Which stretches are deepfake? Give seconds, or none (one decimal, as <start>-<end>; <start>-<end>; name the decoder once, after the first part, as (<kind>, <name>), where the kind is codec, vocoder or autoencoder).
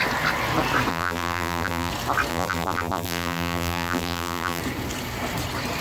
0.9-1.9 (vocoder, BigVGAN v2); 2.3-4.6